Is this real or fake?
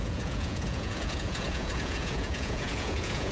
fake